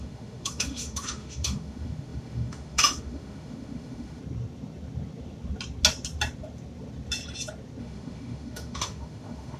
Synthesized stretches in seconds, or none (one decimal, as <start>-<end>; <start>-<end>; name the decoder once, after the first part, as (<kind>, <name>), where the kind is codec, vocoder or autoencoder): 0.0-4.2 (autoencoder, DAC-VAE); 7.8-9.6